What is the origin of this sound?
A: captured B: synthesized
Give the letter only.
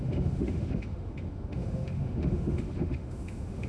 B